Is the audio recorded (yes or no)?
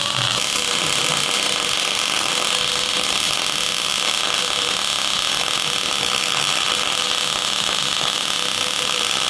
yes